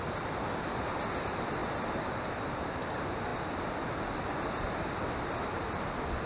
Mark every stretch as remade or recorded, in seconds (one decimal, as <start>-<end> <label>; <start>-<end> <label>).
0.0-6.3 recorded

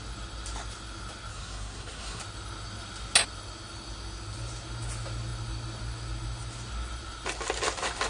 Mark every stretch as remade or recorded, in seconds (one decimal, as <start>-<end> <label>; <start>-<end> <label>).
0.0-1.3 recorded; 1.3-2.2 remade; 2.2-8.1 recorded

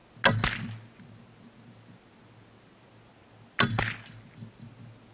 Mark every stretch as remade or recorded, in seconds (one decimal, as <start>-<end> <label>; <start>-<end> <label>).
0.0-5.1 recorded

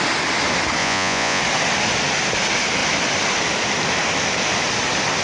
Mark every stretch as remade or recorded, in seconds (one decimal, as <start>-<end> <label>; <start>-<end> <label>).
0.0-0.8 recorded; 0.8-1.4 remade; 1.4-5.2 recorded